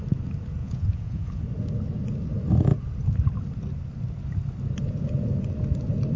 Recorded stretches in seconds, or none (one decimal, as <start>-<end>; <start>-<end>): 0.0-0.6; 1.4-6.2